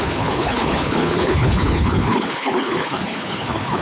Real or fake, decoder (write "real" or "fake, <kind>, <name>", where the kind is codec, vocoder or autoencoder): fake, codec, HILCodec